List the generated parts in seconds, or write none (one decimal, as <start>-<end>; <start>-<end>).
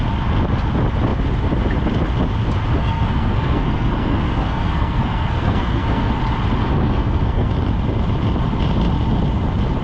2.8-6.1; 6.7-7.5